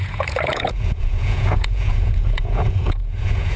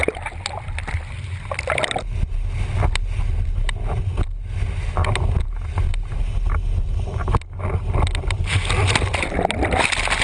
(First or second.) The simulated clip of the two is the first